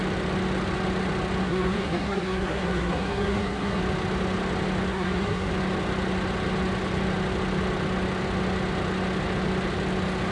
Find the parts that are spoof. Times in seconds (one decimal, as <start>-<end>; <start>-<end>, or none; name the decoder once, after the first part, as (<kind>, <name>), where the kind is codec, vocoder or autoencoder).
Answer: 1.4-3.8 (codec, SNAC); 4.9-5.5